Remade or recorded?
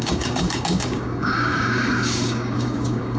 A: remade